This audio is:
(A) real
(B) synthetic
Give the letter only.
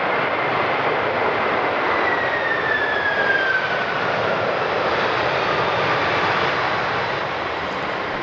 B